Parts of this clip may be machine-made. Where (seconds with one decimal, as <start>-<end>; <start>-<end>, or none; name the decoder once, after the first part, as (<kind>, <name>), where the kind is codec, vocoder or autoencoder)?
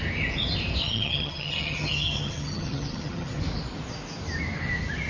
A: 0.8-3.4 (vocoder, HiFi-GAN)